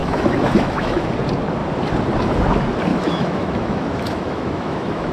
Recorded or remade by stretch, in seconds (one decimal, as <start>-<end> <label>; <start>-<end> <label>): 0.0-1.1 remade; 1.1-2.9 recorded; 2.9-5.1 remade